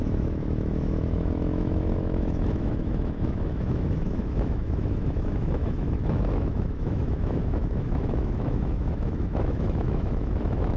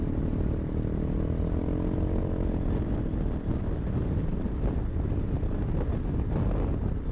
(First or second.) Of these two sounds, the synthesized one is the first